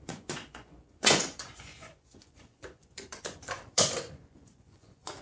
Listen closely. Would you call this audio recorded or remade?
remade